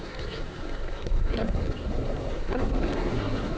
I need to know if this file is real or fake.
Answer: fake